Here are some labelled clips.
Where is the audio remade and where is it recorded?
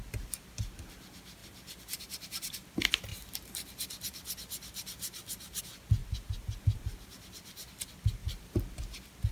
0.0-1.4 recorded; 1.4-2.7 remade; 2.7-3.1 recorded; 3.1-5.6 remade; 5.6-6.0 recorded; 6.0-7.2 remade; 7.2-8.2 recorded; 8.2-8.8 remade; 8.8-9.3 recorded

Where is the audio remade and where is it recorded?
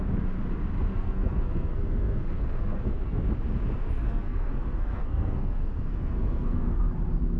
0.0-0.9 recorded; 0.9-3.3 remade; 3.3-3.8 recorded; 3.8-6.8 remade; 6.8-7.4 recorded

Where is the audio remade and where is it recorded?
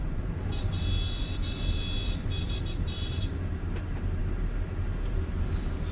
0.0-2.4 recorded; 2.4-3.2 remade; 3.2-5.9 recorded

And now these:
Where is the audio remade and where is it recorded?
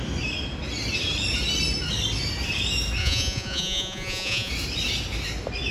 0.0-3.0 recorded; 3.0-4.5 remade; 4.5-5.7 recorded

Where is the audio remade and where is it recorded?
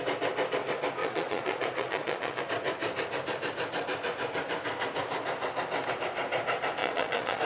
0.0-1.0 recorded; 1.0-2.4 remade; 2.4-6.8 recorded; 6.8-7.4 remade